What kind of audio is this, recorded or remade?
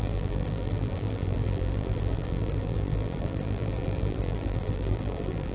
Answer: remade